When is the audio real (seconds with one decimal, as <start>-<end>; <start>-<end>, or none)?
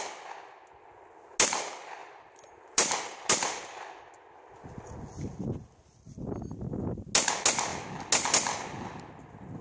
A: 0.0-2.0; 4.0-9.6